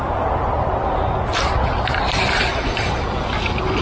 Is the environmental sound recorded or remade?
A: recorded